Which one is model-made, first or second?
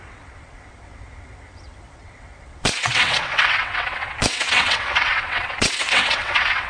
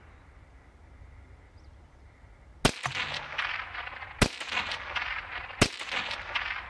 first